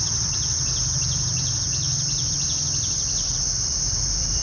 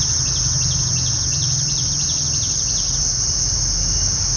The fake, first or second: first